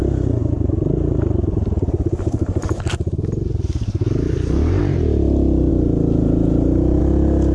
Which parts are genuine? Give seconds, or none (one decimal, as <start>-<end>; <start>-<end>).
0.0-0.4; 4.8-5.7; 7.0-7.5